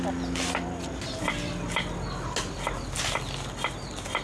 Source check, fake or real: real